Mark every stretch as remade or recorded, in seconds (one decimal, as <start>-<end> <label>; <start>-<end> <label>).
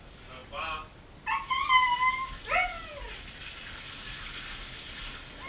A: 0.0-5.5 recorded